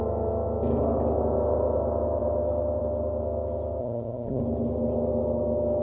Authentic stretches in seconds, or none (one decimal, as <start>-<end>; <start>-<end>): 0.0-3.8; 4.4-5.8

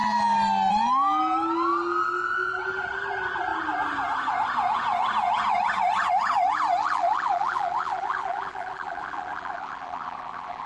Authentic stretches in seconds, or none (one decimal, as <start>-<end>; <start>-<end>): 0.0-6.8

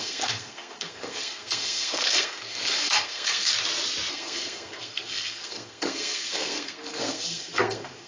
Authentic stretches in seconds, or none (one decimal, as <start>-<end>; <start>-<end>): 3.5-4.1